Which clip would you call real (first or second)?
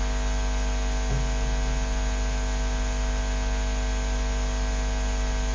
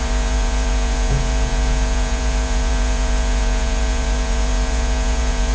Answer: first